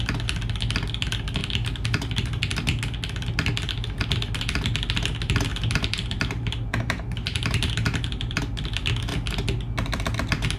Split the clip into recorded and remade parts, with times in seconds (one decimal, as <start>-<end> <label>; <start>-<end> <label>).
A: 0.0-5.5 recorded; 5.5-8.4 remade; 8.4-10.6 recorded

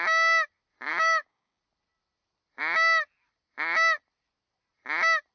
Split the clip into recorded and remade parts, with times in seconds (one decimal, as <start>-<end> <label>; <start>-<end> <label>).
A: 0.0-0.9 recorded; 0.9-1.6 remade; 1.6-5.3 recorded